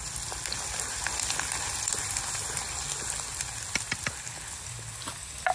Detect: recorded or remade recorded